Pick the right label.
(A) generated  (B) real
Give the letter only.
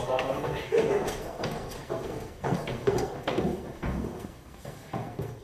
A